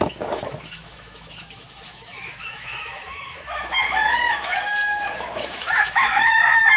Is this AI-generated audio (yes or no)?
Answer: yes